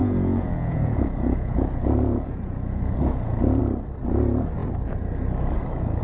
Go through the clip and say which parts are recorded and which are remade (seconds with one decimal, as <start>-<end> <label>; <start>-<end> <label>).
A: 0.0-3.6 remade; 3.6-6.0 recorded